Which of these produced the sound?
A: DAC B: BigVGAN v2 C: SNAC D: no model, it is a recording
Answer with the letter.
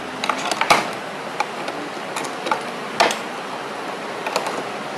D